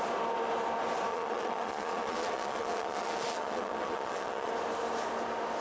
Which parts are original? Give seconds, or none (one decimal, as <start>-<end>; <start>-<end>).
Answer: 0.0-1.1; 4.5-5.6